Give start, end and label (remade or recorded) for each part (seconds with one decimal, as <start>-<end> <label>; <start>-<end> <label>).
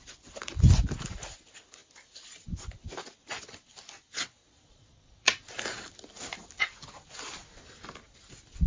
0.0-4.4 recorded; 4.4-5.5 remade; 5.5-8.7 recorded